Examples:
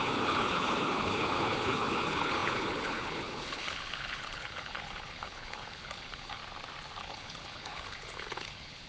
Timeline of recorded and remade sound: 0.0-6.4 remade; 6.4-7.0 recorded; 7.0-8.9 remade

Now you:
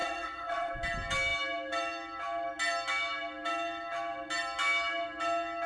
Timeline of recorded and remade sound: 0.0-0.7 remade; 0.7-5.7 recorded

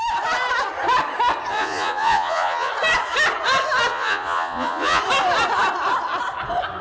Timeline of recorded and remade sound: 0.0-1.5 recorded; 1.5-2.7 remade; 2.7-3.9 recorded; 3.9-5.0 remade; 5.0-6.8 recorded

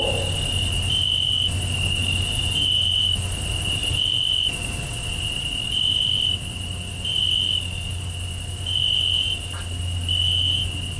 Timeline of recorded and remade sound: 0.0-11.0 recorded

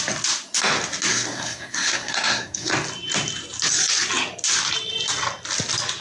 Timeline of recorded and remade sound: 0.0-1.1 recorded; 1.1-2.7 remade; 2.7-6.0 recorded